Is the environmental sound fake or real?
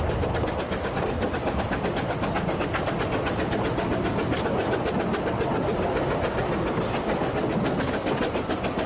real